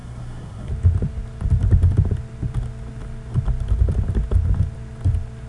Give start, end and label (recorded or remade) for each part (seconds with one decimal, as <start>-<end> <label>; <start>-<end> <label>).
0.0-0.7 remade; 0.7-5.5 recorded